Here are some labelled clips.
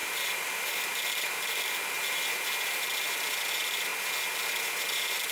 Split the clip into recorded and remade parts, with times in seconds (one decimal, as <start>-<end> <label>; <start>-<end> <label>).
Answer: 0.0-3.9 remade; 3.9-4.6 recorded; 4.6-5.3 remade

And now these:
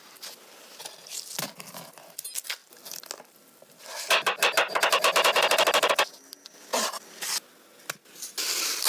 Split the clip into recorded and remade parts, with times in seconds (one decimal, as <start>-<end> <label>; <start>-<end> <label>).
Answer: 0.0-8.9 recorded

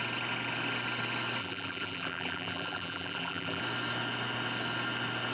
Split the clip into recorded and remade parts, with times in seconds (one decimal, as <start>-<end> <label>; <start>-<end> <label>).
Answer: 0.0-1.4 recorded; 1.4-3.6 remade; 3.6-5.3 recorded